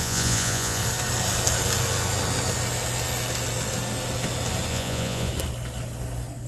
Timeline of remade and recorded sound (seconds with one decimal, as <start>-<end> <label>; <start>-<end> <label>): 0.0-0.8 remade; 0.8-4.7 recorded; 4.7-5.3 remade; 5.3-6.5 recorded

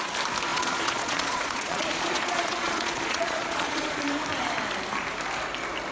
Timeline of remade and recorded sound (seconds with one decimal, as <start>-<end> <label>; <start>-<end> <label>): 0.0-0.5 recorded; 0.5-4.0 remade; 4.0-5.9 recorded